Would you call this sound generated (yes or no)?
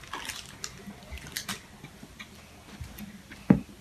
no